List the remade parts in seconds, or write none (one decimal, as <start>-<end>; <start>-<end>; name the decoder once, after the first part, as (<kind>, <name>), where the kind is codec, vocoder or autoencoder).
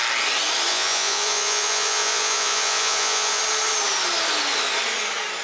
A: 0.7-3.4 (vocoder, Vocos)